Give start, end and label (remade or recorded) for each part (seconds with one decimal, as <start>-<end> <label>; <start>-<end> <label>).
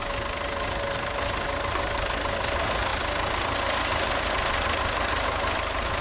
0.0-6.0 recorded